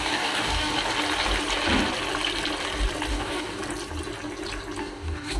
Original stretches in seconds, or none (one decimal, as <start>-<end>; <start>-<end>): 0.7-3.1; 3.6-4.8

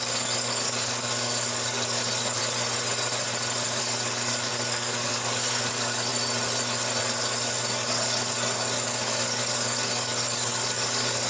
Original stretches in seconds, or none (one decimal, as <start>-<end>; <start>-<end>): 2.4-3.8; 6.1-7.0

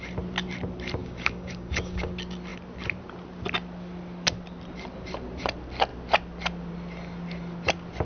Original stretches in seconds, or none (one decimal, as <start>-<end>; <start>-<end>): 0.0-1.0; 2.1-8.1

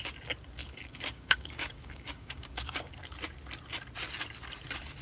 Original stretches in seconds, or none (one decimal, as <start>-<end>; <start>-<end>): 0.0-0.6; 2.9-5.0